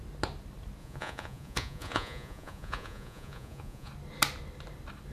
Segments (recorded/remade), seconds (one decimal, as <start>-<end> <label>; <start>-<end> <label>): 0.0-0.8 recorded; 0.8-3.9 remade; 3.9-5.1 recorded